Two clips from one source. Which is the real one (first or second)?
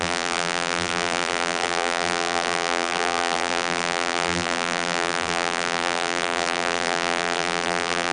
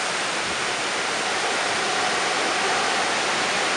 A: second